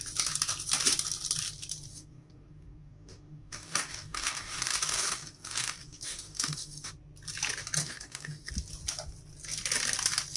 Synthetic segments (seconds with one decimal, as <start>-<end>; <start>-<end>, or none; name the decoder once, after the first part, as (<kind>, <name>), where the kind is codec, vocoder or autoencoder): 1.9-6.9 (codec, DAC); 7.8-8.5